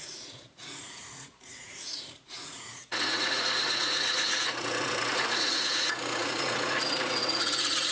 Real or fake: fake